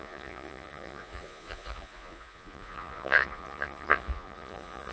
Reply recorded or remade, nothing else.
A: remade